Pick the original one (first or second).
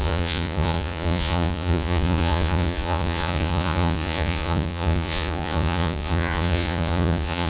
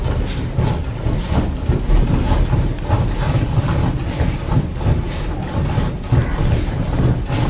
second